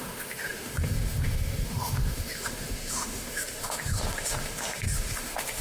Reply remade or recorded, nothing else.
remade